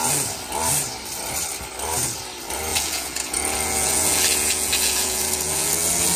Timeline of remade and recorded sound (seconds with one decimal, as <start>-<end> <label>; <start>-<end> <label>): 0.0-2.7 recorded; 2.7-6.2 remade